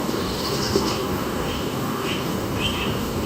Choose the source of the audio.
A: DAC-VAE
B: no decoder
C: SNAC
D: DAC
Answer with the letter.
D